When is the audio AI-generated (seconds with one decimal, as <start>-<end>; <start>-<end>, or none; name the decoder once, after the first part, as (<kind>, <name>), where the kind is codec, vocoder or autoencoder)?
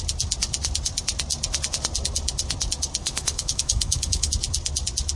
3.0-4.3 (autoencoder, DAC-VAE)